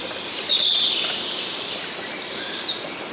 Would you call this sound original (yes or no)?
yes